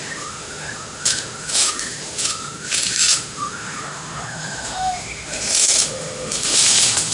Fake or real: fake